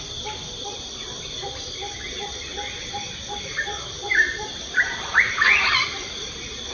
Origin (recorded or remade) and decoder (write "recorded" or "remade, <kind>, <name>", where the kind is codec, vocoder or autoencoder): recorded